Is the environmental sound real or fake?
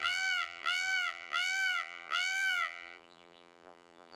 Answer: fake